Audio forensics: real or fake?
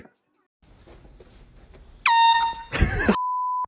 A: real